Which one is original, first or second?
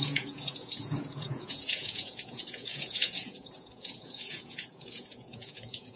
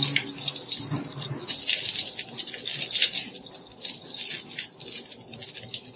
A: second